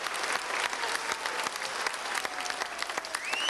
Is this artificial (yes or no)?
no